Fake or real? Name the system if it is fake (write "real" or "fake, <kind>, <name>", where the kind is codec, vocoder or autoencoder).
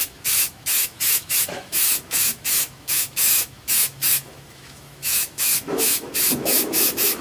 fake, autoencoder, DAC-VAE